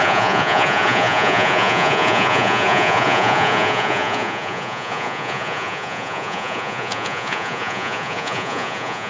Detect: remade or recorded remade